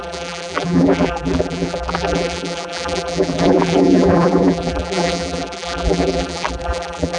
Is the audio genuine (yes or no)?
no